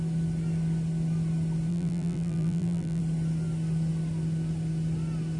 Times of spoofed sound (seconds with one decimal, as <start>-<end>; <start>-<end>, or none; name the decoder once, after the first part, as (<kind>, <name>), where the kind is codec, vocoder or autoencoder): 1.7-3.0 (vocoder, BigVGAN v2)